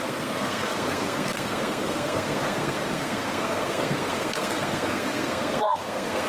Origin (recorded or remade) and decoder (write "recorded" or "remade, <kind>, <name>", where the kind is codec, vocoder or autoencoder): remade, codec, SNAC